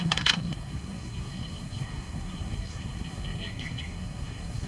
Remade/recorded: remade